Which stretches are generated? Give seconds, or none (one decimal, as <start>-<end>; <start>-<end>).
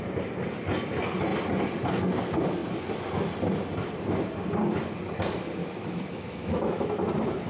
5.6-6.9